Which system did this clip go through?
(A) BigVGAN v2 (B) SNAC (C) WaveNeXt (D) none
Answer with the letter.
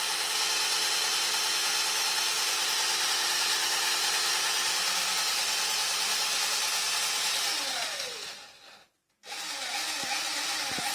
D